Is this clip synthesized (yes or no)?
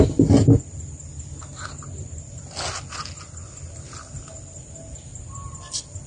no